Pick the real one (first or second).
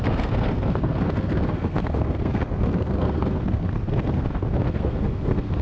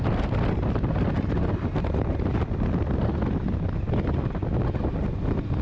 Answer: second